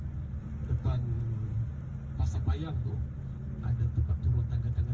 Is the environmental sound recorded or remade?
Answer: recorded